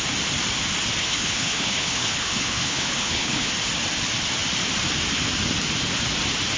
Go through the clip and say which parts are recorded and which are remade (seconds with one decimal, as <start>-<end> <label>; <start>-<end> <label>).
0.0-1.0 recorded; 1.0-3.5 remade; 3.5-6.6 recorded